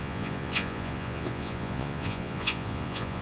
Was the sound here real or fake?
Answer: fake